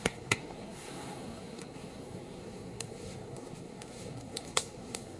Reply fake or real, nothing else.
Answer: fake